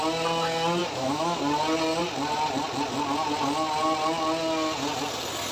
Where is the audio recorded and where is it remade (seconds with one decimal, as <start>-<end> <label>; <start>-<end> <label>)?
0.0-0.8 recorded; 0.8-1.4 remade; 1.4-5.5 recorded